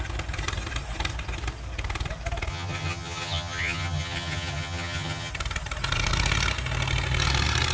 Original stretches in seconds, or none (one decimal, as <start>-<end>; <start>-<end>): 0.0-2.5; 5.3-7.7